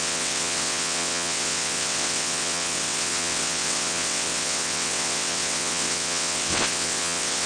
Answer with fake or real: fake